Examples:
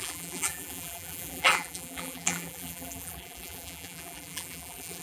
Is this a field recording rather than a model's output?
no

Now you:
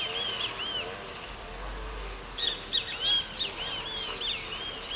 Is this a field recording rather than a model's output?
yes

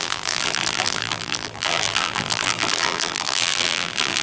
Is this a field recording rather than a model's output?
no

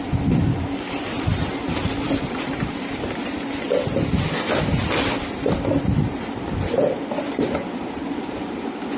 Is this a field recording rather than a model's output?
no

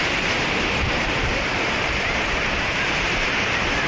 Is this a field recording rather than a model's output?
no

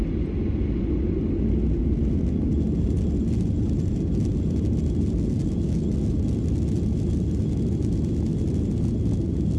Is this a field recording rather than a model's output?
yes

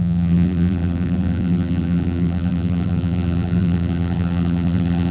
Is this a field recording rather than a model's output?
no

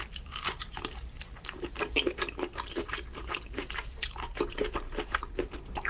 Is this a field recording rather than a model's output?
no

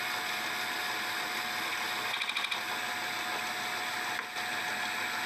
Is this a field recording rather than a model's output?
yes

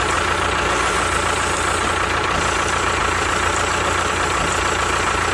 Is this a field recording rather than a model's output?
yes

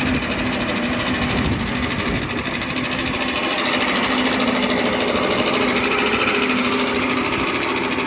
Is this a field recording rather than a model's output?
yes